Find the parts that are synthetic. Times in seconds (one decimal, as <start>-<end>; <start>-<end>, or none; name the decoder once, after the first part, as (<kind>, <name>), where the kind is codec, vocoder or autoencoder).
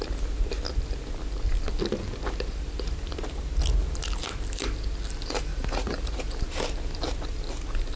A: 5.5-6.2 (vocoder, Vocos)